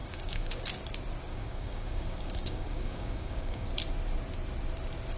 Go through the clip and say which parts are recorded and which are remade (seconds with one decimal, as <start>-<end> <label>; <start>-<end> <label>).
0.0-0.5 remade; 0.5-1.3 recorded; 1.3-3.7 remade; 3.7-5.2 recorded